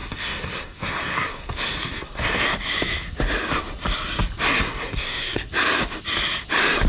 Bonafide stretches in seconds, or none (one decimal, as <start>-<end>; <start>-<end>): 2.4-4.5; 5.5-6.9